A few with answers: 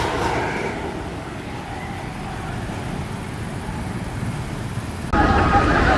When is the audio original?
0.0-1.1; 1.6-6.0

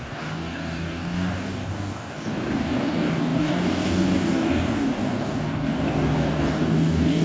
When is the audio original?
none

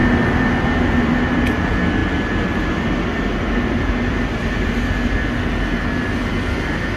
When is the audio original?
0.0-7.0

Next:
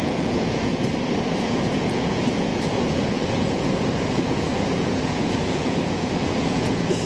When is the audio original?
0.7-1.4

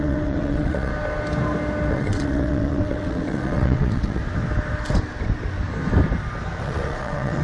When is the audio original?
0.9-1.9; 4.2-6.6

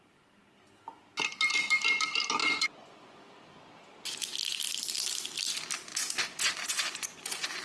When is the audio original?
0.0-2.4; 3.6-5.9